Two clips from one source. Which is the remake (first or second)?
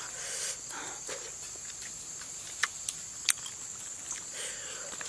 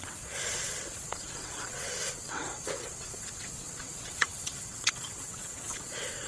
second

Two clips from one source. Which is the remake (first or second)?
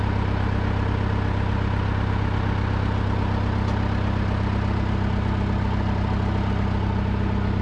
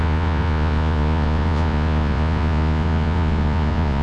second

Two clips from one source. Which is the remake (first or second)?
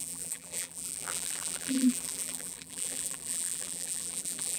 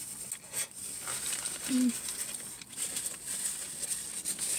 first